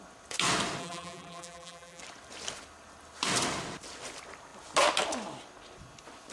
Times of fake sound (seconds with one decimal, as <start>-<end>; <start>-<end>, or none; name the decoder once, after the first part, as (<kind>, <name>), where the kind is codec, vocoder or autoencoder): 0.8-2.0 (vocoder, BigVGAN v2)